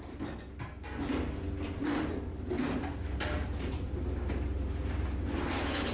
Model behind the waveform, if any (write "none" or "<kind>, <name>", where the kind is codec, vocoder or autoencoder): none